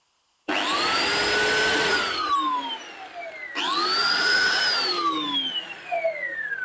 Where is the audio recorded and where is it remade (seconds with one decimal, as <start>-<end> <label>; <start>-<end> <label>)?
0.0-1.7 recorded; 1.7-2.3 remade; 2.3-4.0 recorded; 4.0-4.6 remade; 4.6-5.6 recorded; 5.6-6.6 remade